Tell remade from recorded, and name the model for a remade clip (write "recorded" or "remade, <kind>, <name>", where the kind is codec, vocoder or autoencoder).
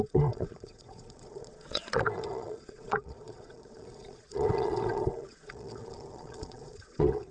remade, vocoder, Vocos